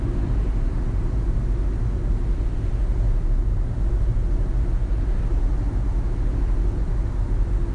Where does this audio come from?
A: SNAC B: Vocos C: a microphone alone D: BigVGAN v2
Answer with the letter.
C